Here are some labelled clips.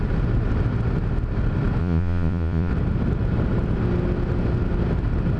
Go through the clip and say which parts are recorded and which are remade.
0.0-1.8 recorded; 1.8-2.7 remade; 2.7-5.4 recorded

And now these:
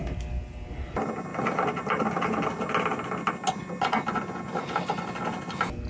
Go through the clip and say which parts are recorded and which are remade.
0.0-5.9 recorded

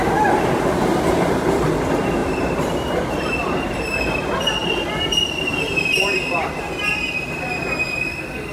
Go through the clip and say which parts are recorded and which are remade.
0.0-2.2 recorded; 2.2-3.6 remade; 3.6-4.6 recorded; 4.6-5.6 remade; 5.6-8.5 recorded

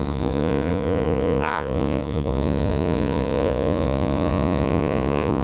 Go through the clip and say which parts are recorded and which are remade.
0.0-5.4 remade

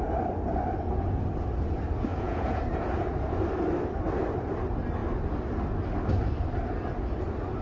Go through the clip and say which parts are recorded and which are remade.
0.0-2.1 recorded; 2.1-2.6 remade; 2.6-7.6 recorded

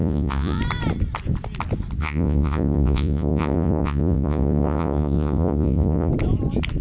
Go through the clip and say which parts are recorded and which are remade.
0.0-0.6 remade; 0.6-2.0 recorded; 2.0-6.1 remade; 6.1-6.8 recorded

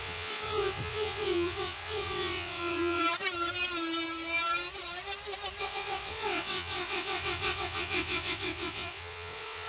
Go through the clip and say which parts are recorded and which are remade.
0.0-3.0 remade; 3.0-5.6 recorded; 5.6-9.7 remade